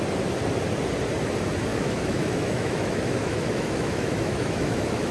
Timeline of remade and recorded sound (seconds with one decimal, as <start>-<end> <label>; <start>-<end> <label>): 0.0-1.7 recorded; 1.7-5.1 remade